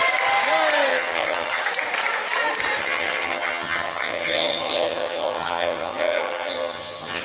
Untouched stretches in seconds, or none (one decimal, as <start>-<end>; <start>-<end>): 0.0-0.9; 1.6-2.8